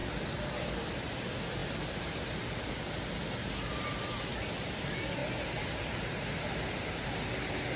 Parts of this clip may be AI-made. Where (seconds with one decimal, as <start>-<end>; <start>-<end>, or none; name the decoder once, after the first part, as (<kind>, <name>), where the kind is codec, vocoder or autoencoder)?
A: none

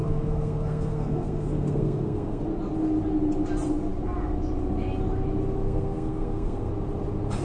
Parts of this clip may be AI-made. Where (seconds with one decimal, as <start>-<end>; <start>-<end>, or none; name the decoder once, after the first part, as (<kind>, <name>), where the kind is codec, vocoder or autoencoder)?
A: 0.0-2.4 (codec, SNAC); 5.6-6.7

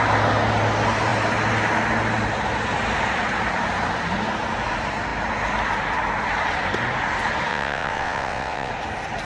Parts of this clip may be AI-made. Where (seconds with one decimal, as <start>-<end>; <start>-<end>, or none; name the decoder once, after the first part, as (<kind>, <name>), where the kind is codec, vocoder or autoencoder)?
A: 7.5-8.7 (vocoder, WaveNeXt)

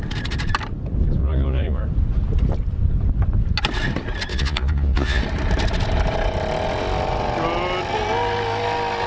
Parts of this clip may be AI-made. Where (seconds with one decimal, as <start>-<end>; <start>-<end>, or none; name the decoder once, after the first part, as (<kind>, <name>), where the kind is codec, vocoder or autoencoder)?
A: 1.2-1.8 (vocoder, Vocos); 4.3-5.2

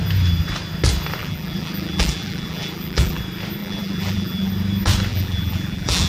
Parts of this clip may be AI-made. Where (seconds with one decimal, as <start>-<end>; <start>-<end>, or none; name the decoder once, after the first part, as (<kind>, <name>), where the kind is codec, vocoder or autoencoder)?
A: 1.2-3.2 (vocoder, BigVGAN v2); 3.6-4.5; 5.1-6.1

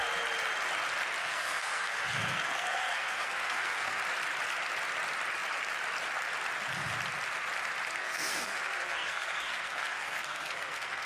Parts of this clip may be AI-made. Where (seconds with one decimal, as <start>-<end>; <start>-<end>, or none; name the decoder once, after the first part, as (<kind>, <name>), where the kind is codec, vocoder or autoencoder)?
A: 1.2-4.0 (codec, SNAC); 8.0-11.1